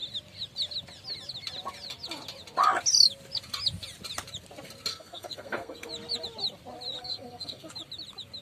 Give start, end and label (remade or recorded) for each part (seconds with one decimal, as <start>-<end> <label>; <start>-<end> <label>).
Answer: 0.0-4.9 recorded; 4.9-5.9 remade; 5.9-7.0 recorded; 7.0-7.7 remade; 7.7-8.4 recorded